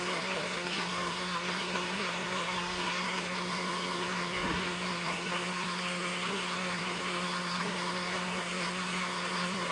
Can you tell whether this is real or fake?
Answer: fake